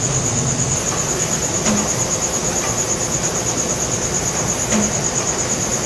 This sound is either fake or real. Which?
real